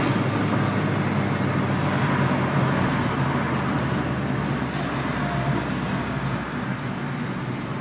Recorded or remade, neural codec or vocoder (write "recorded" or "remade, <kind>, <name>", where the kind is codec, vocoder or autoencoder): recorded